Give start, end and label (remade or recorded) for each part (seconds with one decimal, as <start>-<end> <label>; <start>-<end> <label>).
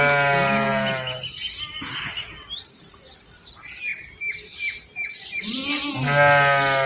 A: 0.0-6.9 recorded